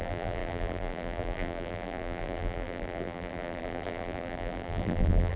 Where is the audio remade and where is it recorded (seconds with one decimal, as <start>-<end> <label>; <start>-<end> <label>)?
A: 0.0-5.4 remade